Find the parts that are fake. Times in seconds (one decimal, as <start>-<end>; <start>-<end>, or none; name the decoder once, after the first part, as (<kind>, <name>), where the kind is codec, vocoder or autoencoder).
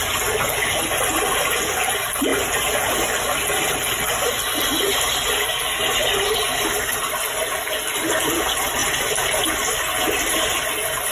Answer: 8.8-10.4 (vocoder, BigVGAN v2)